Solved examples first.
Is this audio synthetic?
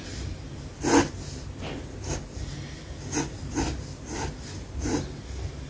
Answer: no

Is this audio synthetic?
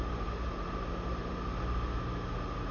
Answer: no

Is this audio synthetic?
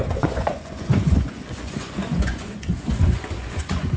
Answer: yes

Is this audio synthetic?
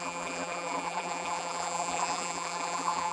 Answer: yes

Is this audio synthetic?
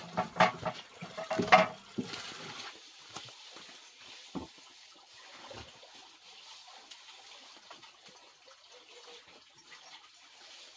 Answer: no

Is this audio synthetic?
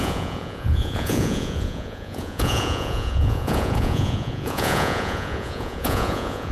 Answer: yes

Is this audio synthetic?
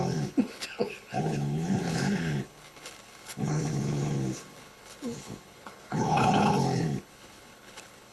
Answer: yes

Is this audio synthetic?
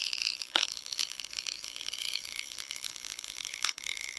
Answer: yes